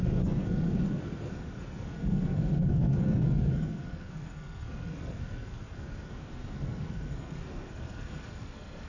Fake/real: fake